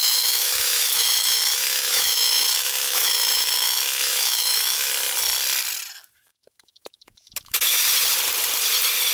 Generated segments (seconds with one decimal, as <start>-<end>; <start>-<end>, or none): 0.0-4.9; 6.3-7.8

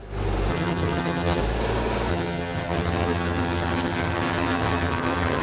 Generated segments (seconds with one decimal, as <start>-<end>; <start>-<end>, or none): 0.5-1.4; 2.1-5.4